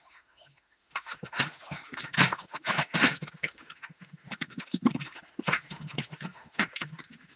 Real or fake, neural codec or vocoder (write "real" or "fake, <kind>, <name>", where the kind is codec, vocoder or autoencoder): fake, autoencoder, DAC-VAE